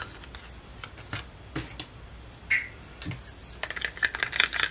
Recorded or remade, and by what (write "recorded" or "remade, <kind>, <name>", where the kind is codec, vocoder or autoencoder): recorded